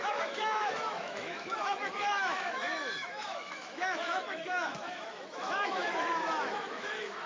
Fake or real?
fake